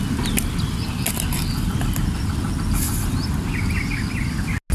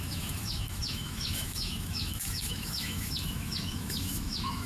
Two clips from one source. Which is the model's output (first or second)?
second